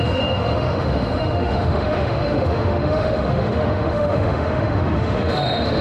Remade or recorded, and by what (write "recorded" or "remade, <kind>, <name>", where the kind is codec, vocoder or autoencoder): remade, autoencoder, DAC-VAE